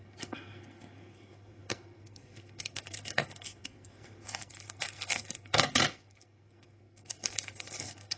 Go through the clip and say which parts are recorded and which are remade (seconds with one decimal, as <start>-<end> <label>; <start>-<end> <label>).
0.0-8.2 remade